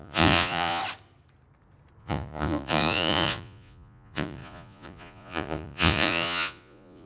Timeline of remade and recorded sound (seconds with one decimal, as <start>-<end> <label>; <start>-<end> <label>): 0.0-0.8 remade; 0.8-2.0 recorded; 2.0-7.1 remade

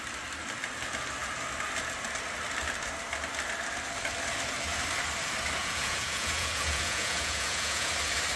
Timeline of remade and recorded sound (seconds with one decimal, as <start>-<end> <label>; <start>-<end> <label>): 0.0-5.6 recorded; 5.6-7.9 remade; 7.9-8.4 recorded

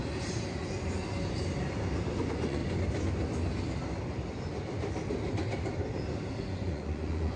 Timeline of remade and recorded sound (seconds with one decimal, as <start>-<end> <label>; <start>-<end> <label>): 0.0-2.2 recorded; 2.2-2.6 remade; 2.6-6.4 recorded; 6.4-7.4 remade

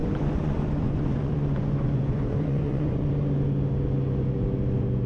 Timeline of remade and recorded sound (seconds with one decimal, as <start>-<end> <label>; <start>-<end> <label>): 0.0-3.1 remade; 3.1-5.1 recorded

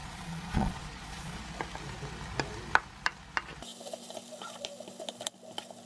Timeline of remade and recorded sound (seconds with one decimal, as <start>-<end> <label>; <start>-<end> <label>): 0.0-1.4 remade; 1.4-5.9 recorded

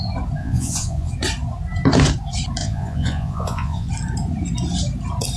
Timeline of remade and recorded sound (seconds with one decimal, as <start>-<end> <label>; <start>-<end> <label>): 0.0-0.4 recorded; 0.4-1.1 remade; 1.1-2.6 recorded; 2.6-3.9 remade; 3.9-5.4 recorded

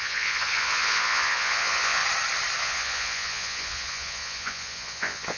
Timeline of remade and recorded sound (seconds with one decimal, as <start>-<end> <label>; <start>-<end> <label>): 0.0-2.0 remade; 2.0-2.6 recorded; 2.6-5.4 remade

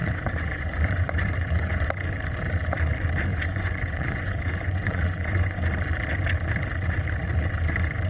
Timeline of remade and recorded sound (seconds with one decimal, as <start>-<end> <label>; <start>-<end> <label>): 0.0-1.9 remade; 1.9-3.3 recorded; 3.3-5.6 remade; 5.6-8.1 recorded